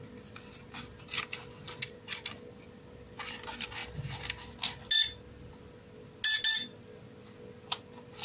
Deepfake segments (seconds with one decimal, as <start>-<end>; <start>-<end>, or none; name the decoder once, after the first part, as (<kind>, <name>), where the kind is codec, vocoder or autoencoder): none

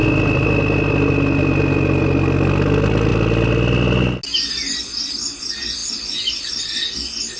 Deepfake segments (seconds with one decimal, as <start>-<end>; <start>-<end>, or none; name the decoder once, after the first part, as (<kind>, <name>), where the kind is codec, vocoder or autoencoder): none